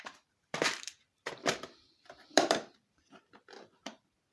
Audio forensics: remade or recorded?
remade